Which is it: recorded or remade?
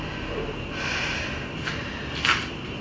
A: recorded